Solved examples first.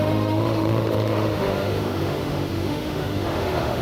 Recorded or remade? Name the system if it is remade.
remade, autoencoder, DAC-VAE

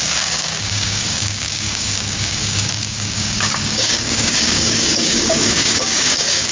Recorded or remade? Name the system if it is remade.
remade, codec, DAC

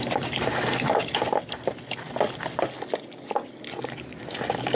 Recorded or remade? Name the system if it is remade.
recorded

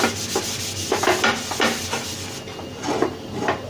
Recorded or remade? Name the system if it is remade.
recorded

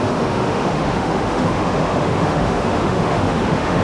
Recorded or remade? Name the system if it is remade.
remade, autoencoder, DAC-VAE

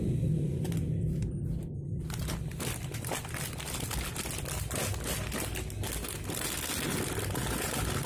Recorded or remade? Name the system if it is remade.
recorded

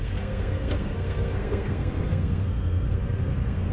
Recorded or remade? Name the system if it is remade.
remade, codec, SNAC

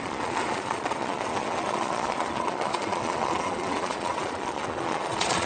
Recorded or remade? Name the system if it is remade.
remade, vocoder, Vocos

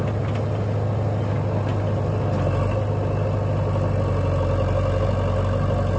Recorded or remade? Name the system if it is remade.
recorded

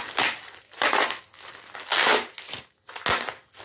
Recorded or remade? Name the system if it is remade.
recorded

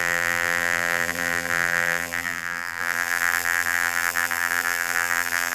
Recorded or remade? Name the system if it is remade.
remade, vocoder, BigVGAN v2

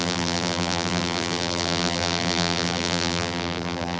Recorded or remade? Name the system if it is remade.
remade, vocoder, BigVGAN v2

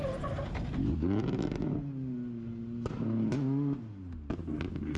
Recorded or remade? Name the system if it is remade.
recorded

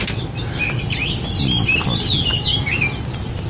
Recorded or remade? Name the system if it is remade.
recorded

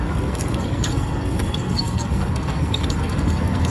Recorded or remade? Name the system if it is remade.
remade, codec, SNAC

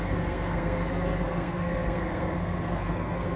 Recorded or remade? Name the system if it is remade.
remade, codec, SNAC